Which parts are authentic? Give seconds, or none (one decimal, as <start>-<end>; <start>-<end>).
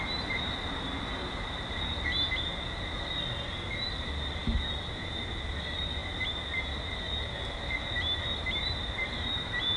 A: 0.0-9.8